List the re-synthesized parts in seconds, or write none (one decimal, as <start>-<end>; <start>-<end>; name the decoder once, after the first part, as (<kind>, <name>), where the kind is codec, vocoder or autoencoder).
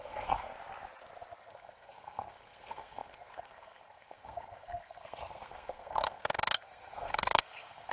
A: 0.0-0.5 (codec, SNAC); 1.4-7.9